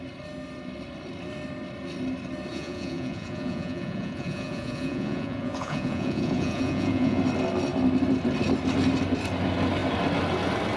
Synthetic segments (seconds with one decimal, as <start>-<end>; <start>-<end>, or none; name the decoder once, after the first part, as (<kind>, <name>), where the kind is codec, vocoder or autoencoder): 2.5-7.2 (vocoder, Vocos)